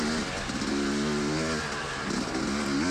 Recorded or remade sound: recorded